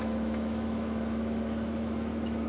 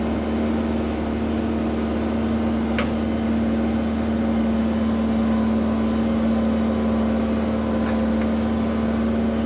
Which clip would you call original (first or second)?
second